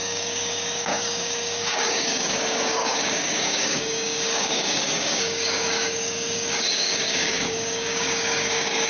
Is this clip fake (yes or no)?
yes